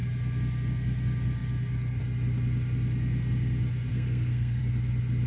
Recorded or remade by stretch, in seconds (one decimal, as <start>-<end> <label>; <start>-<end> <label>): 0.0-3.9 recorded; 3.9-4.6 remade; 4.6-5.3 recorded